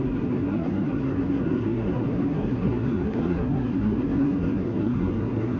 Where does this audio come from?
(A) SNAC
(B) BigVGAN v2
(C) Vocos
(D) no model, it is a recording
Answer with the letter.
A